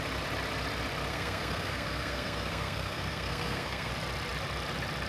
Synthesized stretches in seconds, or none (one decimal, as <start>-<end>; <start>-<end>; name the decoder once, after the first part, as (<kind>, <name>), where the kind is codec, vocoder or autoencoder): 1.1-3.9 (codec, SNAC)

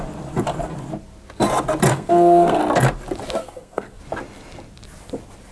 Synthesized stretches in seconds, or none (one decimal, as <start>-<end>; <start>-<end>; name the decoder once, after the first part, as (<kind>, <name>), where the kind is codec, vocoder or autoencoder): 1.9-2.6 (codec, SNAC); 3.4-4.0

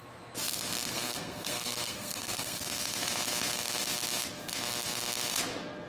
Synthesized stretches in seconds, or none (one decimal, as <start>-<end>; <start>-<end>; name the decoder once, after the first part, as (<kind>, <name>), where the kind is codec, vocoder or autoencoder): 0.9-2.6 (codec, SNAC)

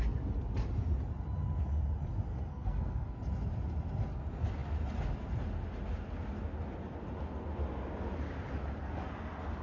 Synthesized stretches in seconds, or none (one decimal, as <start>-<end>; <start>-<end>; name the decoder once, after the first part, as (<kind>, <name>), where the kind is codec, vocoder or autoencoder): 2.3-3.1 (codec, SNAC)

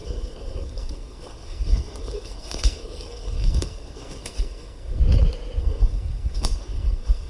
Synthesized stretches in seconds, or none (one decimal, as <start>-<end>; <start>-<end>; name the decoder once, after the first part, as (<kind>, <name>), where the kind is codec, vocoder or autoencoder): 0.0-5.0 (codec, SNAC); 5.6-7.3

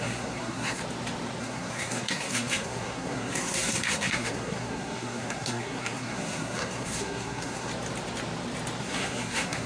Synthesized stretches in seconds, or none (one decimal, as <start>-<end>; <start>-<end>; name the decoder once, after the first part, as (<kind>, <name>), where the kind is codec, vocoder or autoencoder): 0.0-0.8 (codec, SNAC); 1.4-7.7; 8.8-9.7